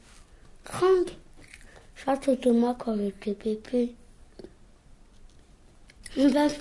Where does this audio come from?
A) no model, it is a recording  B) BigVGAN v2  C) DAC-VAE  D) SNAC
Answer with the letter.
A